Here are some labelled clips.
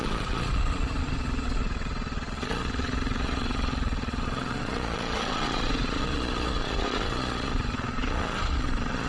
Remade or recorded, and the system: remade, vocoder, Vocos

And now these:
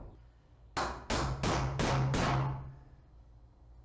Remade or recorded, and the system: recorded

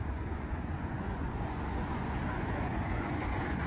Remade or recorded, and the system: remade, vocoder, Vocos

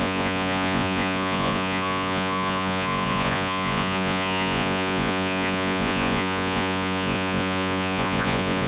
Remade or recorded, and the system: remade, vocoder, Vocos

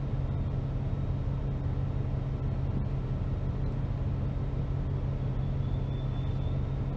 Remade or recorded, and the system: recorded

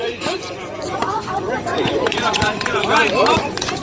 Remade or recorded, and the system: remade, vocoder, Vocos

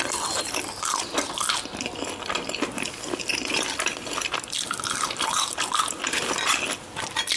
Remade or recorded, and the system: recorded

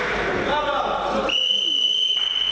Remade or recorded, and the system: recorded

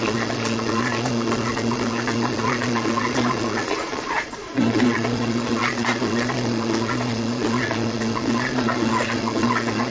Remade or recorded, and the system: remade, vocoder, Vocos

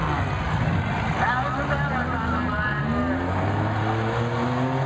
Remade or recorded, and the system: recorded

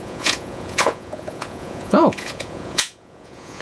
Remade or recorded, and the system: remade, vocoder, Vocos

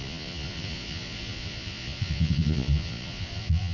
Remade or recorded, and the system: remade, vocoder, Vocos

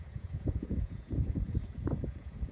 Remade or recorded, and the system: remade, vocoder, Vocos